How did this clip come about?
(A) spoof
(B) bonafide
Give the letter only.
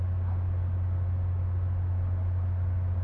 B